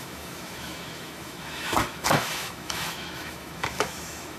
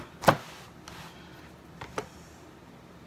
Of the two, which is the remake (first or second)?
first